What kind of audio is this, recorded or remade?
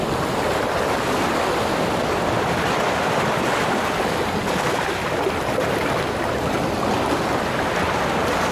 recorded